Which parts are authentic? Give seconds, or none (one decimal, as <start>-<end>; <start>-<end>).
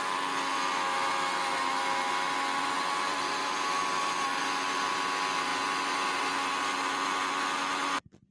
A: 0.0-8.3